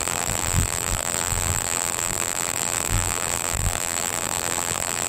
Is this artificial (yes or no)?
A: yes